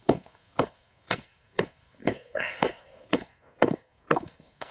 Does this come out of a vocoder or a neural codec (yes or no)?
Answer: yes